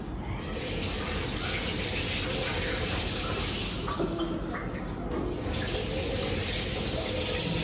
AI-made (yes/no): no